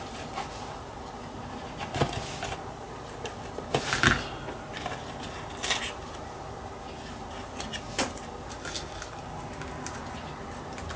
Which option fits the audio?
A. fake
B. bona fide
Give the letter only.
B